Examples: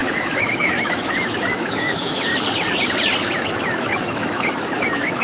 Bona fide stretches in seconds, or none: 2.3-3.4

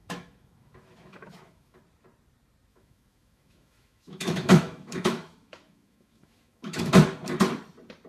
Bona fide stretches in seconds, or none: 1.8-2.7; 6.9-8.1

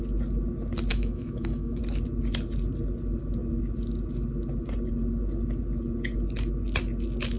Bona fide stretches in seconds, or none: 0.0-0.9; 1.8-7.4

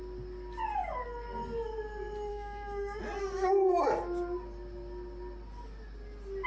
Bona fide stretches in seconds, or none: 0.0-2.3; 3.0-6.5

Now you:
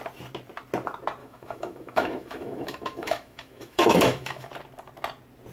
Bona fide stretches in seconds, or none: 0.0-1.2; 4.5-5.5